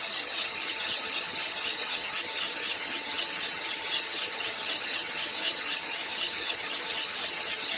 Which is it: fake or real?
fake